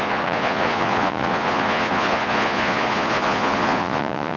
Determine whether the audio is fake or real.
fake